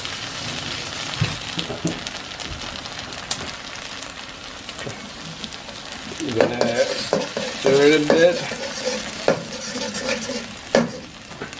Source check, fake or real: real